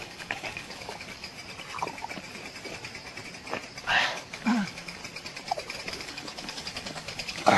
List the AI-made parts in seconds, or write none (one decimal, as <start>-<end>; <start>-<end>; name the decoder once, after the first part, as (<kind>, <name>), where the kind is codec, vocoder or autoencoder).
0.0-1.3 (codec, DAC); 3.8-5.0; 5.9-7.6